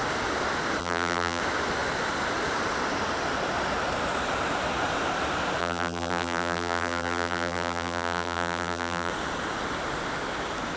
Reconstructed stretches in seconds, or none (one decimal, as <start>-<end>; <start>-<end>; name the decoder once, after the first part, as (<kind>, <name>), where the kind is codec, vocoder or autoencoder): 0.8-1.4 (vocoder, BigVGAN v2); 5.6-9.1